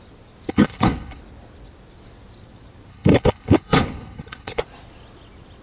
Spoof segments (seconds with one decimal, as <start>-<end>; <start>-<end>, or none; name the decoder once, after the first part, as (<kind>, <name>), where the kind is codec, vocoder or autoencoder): 0.5-1.2 (codec, HILCodec); 2.9-4.6

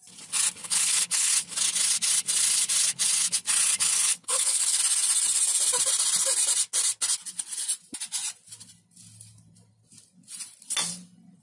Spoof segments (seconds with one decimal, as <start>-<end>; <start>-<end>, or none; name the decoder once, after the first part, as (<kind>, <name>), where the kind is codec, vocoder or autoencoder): 0.6-1.3 (codec, HILCodec); 4.1-4.8

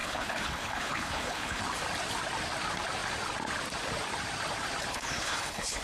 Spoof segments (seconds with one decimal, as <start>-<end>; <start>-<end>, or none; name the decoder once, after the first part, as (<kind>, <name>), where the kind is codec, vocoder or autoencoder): 0.0-1.6 (codec, HILCodec); 4.9-5.8

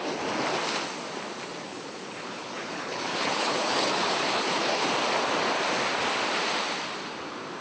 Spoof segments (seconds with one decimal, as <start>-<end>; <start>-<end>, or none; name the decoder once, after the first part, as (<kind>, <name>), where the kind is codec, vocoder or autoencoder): 1.7-4.9 (codec, HILCodec)

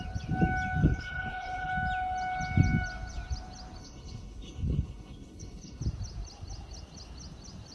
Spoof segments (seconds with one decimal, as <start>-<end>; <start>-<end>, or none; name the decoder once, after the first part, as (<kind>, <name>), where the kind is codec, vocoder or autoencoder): 0.8-1.7 (codec, HILCodec); 3.8-5.8